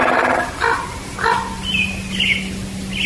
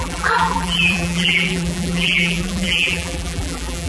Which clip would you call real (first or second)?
first